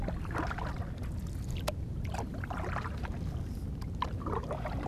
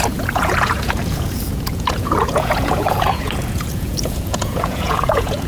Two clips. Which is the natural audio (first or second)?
first